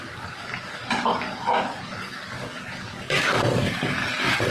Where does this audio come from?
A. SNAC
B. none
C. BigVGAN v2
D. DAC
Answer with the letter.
D